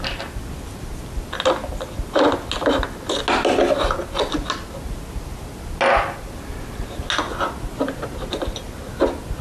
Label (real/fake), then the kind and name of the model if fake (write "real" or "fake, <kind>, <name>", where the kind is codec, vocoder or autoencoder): real